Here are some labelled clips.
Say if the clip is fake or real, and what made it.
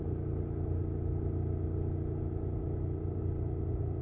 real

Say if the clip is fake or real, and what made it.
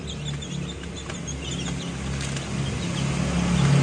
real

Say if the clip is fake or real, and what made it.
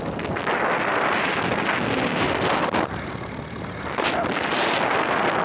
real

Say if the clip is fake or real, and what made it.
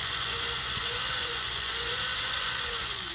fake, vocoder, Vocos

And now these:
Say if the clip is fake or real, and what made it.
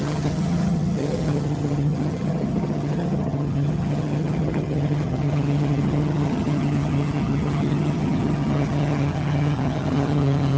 fake, vocoder, HiFi-GAN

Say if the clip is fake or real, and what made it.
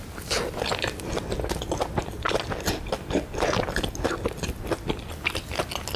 real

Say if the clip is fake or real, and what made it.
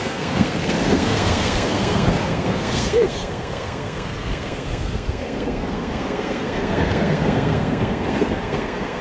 fake, codec, SNAC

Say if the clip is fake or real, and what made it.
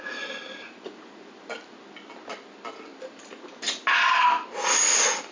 real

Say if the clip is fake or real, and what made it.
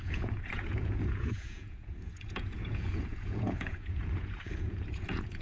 fake, vocoder, Vocos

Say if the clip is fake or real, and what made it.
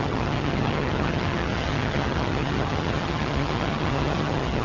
fake, vocoder, HiFi-GAN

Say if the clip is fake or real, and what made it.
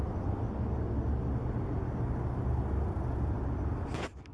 real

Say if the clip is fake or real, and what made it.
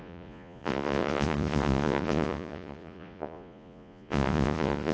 fake, vocoder, Vocos